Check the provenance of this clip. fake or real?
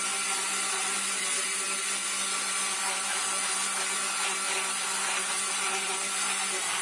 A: real